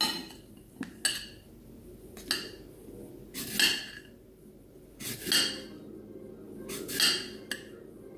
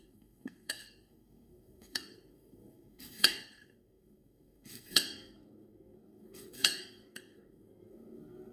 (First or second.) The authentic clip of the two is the first